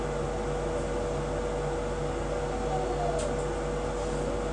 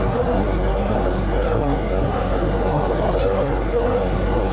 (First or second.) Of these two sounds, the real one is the first